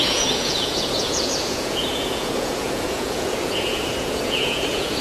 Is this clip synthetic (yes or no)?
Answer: yes